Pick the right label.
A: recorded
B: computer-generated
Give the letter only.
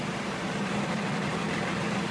B